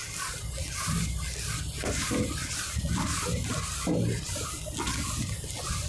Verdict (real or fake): real